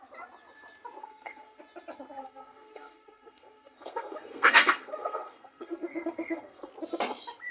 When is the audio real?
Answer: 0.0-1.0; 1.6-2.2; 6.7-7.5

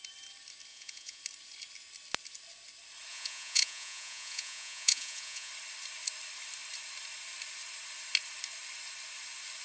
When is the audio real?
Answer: 0.0-0.7; 1.2-3.1; 5.5-9.6

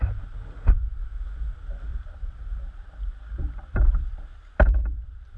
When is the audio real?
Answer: 0.0-1.9